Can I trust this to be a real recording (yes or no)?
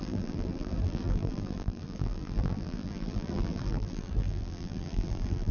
no